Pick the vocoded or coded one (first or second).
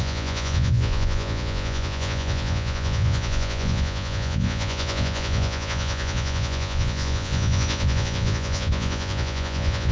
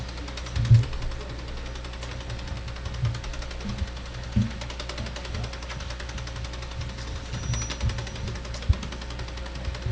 first